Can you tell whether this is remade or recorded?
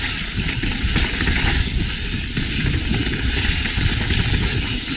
recorded